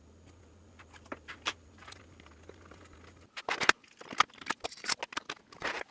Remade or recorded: recorded